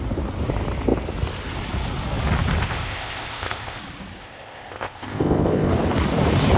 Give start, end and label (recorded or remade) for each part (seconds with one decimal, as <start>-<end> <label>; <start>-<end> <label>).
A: 0.0-2.6 recorded; 2.6-3.8 remade; 3.8-4.2 recorded; 4.2-5.7 remade; 5.7-6.6 recorded